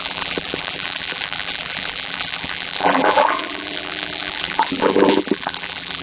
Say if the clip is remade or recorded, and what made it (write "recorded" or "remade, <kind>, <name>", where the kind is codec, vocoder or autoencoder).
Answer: remade, vocoder, BigVGAN v2